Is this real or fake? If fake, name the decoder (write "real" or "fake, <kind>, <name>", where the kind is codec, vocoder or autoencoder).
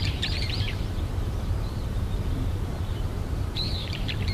fake, vocoder, BigVGAN v2